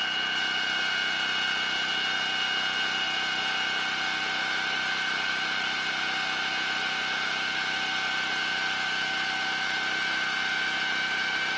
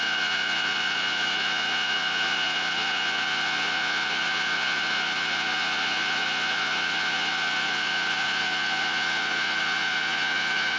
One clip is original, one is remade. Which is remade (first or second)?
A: second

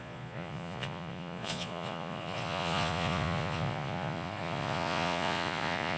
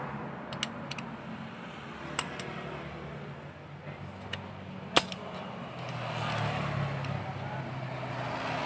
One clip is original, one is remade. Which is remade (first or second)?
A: first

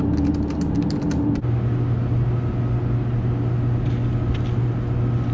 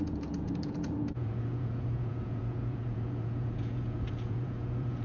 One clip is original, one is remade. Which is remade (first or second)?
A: second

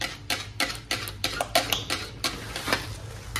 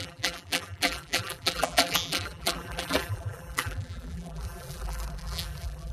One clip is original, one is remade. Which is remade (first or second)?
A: second